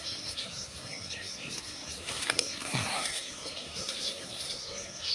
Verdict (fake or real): fake